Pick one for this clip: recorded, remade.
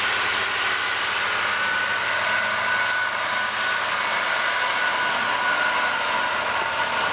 recorded